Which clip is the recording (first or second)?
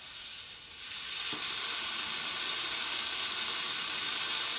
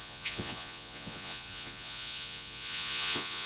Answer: first